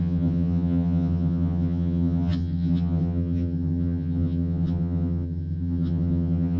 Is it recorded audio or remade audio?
remade